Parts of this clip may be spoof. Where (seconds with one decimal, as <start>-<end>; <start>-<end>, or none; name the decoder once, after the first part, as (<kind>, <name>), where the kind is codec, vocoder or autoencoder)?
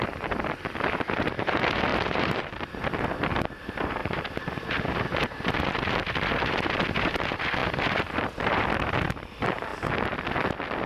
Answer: 0.0-9.7 (vocoder, BigVGAN v2)